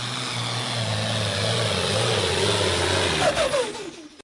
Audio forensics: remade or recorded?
recorded